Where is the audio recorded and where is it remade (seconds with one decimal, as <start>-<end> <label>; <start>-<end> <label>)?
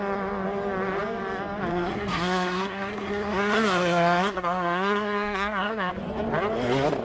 0.0-1.7 recorded; 1.7-5.9 remade; 5.9-7.0 recorded